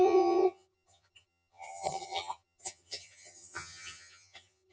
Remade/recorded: remade